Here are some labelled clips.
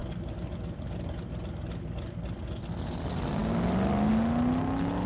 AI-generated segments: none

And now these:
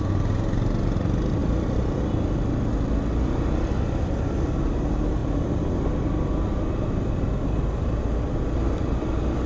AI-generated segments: none

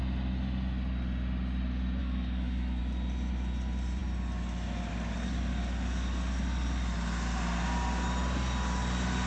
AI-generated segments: 2.0-2.8 (codec, DAC)

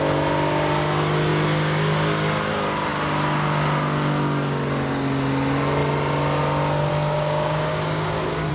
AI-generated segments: 6.9-8.5 (codec, DAC)

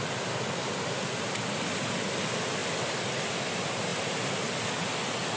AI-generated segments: none

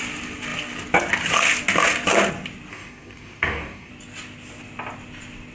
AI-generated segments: 2.7-3.9 (codec, DAC)